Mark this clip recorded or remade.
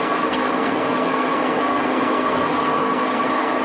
remade